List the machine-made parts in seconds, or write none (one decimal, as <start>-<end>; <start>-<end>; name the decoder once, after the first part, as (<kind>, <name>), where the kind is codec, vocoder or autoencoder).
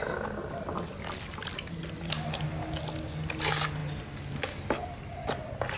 none